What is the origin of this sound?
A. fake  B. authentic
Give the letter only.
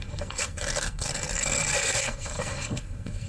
A